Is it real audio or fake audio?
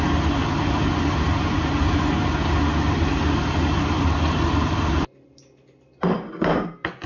real